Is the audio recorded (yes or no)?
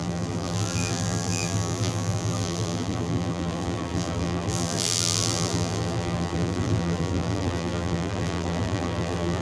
no